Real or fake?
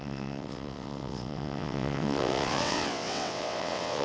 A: fake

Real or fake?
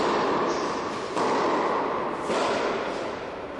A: real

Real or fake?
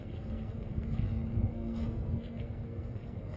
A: fake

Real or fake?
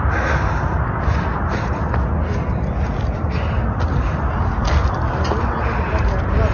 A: real